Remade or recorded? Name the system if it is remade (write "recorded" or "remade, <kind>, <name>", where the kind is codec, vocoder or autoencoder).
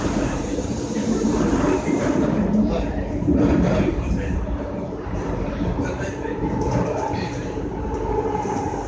remade, vocoder, BigVGAN v2